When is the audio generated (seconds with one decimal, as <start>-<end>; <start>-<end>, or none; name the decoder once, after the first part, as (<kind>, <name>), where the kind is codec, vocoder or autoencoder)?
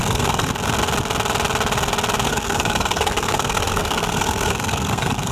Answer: 0.0-0.5 (codec, SNAC); 2.3-5.3